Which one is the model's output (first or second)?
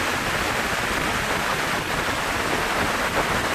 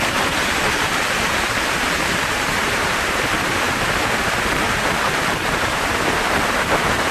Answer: second